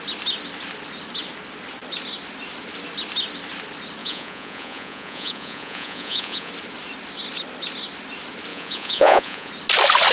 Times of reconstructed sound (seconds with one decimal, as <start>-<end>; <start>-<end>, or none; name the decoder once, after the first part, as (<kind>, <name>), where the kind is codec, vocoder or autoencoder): 4.0-6.5 (vocoder, Vocos); 8.5-9.5